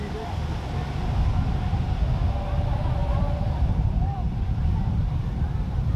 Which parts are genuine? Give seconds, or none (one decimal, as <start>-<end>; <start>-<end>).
0.0-0.4; 1.3-3.0